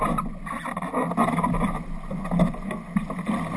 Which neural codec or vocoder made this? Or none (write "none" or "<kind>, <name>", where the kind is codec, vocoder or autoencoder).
none